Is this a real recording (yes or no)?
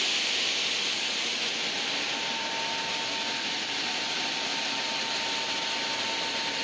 yes